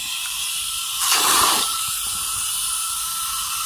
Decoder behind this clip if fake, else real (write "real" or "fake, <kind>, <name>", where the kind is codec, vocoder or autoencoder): fake, vocoder, BigVGAN v2